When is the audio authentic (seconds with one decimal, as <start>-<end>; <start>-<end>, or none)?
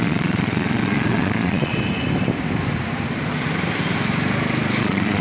1.7-4.8